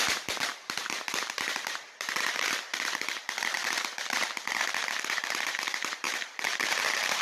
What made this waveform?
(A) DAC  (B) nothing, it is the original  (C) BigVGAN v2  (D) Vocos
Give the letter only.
C